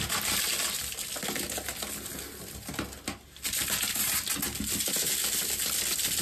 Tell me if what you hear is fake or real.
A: real